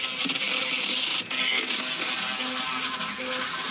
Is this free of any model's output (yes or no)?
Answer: yes